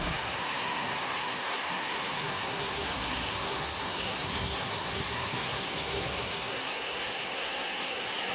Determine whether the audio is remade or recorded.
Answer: remade